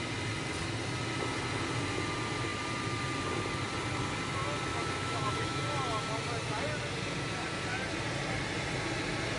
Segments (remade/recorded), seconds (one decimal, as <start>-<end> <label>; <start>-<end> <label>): 0.0-4.7 recorded; 4.7-5.6 remade; 5.6-9.4 recorded